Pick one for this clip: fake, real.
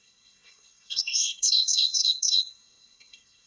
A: fake